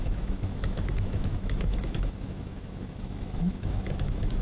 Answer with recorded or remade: remade